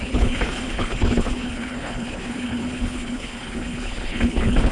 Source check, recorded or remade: remade